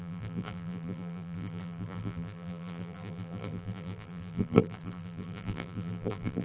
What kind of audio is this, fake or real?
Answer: fake